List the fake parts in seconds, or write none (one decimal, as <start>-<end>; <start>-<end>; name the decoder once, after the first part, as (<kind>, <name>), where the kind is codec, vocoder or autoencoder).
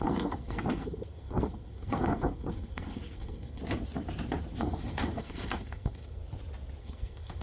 0.0-3.6 (codec, SNAC); 4.6-6.2; 6.8-7.4